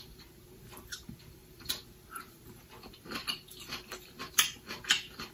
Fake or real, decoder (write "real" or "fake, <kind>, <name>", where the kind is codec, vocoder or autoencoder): fake, vocoder, BigVGAN v2